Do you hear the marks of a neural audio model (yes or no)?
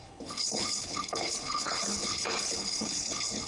yes